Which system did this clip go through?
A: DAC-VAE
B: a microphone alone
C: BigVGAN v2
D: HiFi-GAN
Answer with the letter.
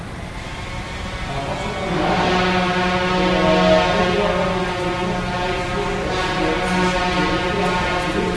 B